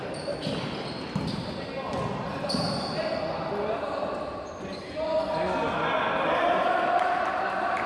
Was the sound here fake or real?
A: real